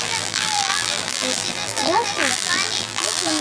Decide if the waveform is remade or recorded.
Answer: remade